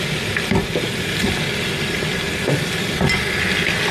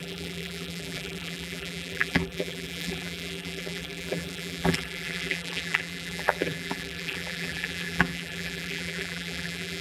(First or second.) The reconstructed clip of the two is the second